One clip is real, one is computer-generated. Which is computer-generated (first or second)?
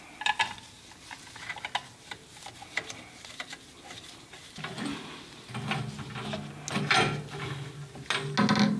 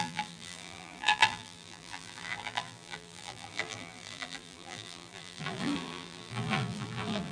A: second